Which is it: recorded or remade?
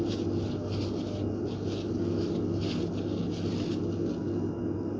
recorded